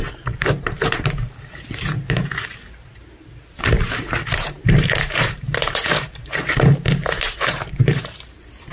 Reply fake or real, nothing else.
fake